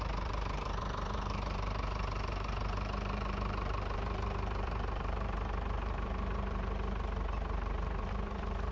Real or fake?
fake